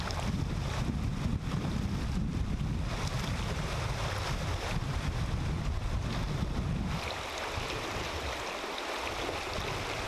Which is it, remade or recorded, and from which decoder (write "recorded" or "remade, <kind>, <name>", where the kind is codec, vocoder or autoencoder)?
recorded